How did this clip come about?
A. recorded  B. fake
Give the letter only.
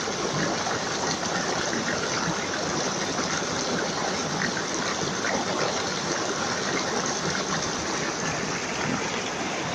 A